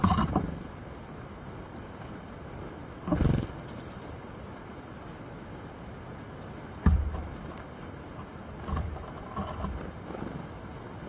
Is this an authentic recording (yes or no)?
yes